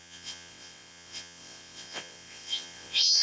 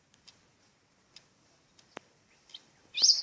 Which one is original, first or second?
second